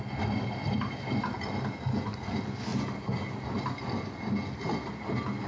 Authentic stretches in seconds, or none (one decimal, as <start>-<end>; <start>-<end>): 0.0-5.5